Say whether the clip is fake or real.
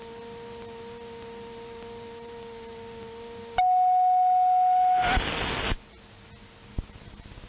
real